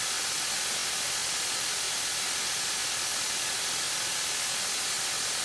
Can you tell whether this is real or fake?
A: real